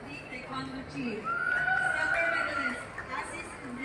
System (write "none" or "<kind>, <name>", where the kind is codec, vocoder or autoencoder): none